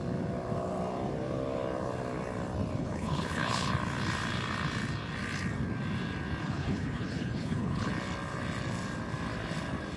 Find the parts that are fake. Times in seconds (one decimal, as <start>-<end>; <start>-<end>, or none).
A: 2.8-3.7; 6.4-7.9